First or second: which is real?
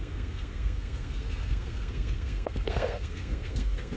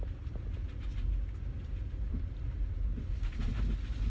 second